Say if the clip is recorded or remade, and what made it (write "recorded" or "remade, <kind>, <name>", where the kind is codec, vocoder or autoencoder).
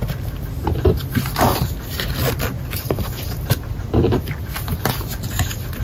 remade, vocoder, BigVGAN v2